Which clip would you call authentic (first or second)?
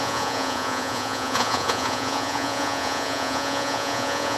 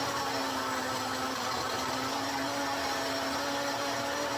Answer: second